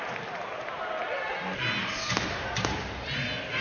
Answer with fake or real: real